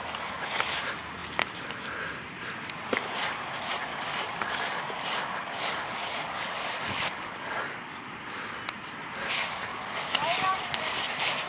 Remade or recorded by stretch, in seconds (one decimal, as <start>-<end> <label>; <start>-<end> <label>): 0.0-3.9 recorded; 3.9-8.4 remade; 8.4-9.7 recorded; 9.7-11.0 remade; 11.0-11.5 recorded